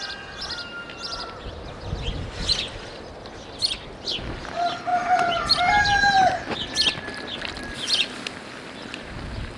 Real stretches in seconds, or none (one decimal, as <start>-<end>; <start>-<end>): 0.0-9.6